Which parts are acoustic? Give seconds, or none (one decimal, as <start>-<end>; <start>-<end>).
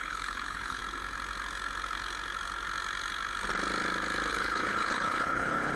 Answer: 0.8-4.3